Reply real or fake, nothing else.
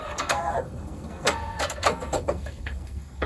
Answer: fake